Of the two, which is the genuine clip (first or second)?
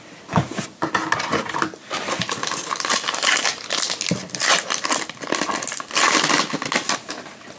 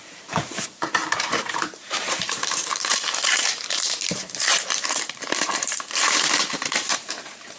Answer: first